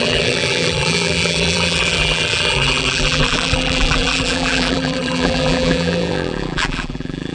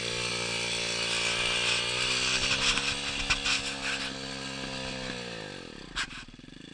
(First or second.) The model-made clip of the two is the first